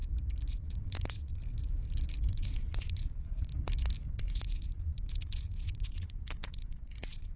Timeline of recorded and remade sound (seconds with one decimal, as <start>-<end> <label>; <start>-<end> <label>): 0.0-0.5 recorded; 0.5-1.4 remade; 1.4-2.3 recorded; 2.3-3.5 remade; 3.5-4.2 recorded; 4.2-7.4 remade